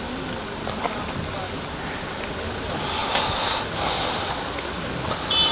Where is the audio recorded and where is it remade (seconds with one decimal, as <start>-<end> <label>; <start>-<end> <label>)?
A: 0.0-5.5 recorded